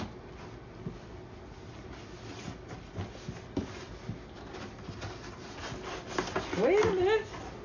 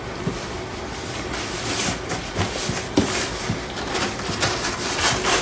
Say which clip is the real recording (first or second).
first